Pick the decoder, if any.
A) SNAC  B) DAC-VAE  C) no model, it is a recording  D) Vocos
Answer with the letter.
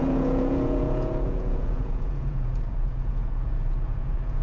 D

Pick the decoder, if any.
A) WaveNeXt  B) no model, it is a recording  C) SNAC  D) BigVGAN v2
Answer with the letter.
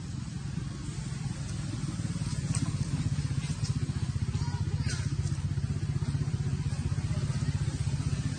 B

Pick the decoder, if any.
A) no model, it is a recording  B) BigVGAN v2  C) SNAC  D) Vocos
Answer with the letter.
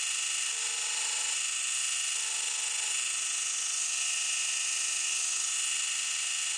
A